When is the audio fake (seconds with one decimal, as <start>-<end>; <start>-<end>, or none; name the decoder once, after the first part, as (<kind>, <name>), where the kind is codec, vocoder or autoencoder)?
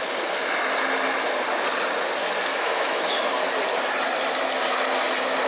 2.5-3.3 (autoencoder, DAC-VAE)